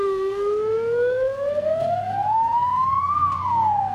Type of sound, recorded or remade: remade